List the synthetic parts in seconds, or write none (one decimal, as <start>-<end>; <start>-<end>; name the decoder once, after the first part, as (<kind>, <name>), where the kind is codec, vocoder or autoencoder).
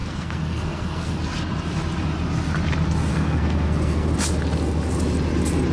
0.0-1.2 (codec, SNAC); 3.1-4.1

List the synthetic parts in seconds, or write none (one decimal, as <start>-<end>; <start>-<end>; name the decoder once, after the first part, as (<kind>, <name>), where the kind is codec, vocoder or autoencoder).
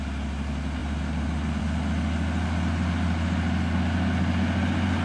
none